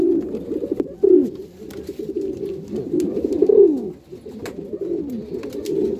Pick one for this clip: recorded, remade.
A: recorded